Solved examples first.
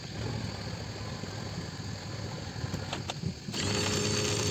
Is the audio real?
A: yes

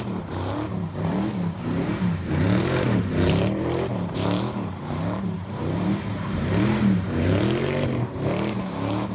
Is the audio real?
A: no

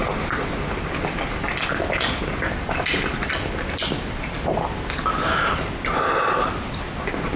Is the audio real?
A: yes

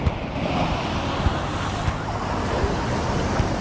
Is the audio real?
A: yes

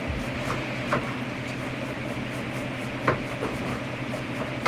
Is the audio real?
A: yes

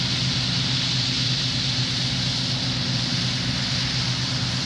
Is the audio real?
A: yes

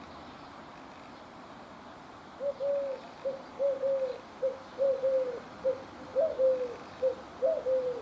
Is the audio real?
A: yes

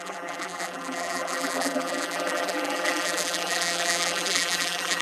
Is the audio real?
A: no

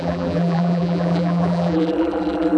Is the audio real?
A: no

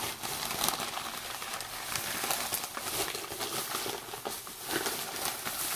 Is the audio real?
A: yes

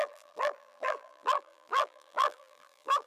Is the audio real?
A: no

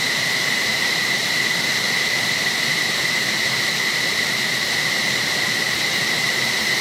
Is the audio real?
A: no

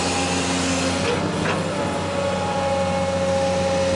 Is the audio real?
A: yes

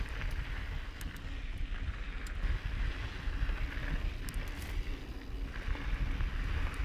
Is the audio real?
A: yes